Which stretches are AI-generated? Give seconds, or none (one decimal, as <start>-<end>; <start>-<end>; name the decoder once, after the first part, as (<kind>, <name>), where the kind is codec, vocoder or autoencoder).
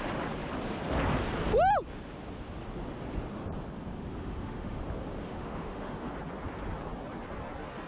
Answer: 4.2-4.8 (autoencoder, DAC-VAE); 5.2-6.1